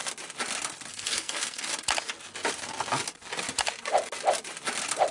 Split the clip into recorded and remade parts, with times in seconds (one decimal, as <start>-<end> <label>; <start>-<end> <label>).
0.0-0.9 recorded; 0.9-1.7 remade; 1.7-5.1 recorded